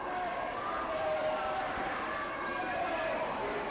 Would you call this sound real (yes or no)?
yes